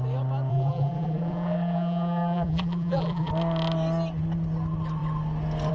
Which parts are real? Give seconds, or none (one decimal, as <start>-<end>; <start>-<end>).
0.0-0.5; 3.3-5.7